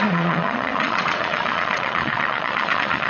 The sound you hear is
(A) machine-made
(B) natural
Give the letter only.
A